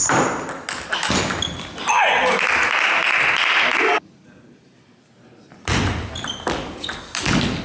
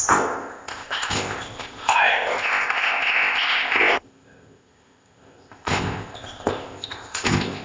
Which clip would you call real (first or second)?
first